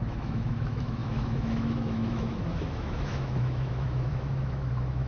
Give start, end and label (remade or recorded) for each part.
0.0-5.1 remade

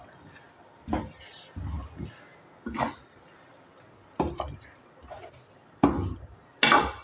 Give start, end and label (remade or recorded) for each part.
0.0-7.0 recorded

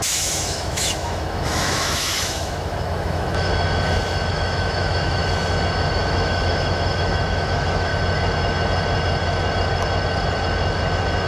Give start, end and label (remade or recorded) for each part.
0.0-3.5 remade; 3.5-4.3 recorded; 4.3-5.2 remade; 5.2-5.8 recorded; 5.8-7.9 remade; 7.9-11.3 recorded

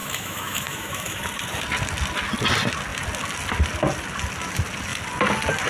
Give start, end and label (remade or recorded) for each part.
0.0-1.2 remade; 1.2-5.7 recorded